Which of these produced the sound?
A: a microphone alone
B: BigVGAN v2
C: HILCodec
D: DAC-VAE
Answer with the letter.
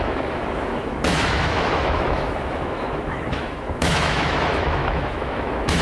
D